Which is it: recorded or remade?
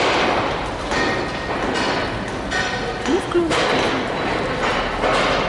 recorded